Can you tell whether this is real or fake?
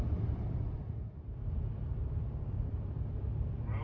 fake